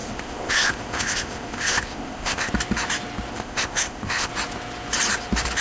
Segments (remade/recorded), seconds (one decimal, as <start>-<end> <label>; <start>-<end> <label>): 0.0-2.5 remade; 2.5-3.3 recorded; 3.3-4.3 remade; 4.3-5.6 recorded